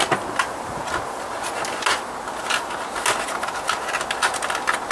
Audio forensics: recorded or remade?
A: recorded